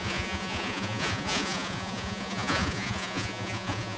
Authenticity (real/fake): fake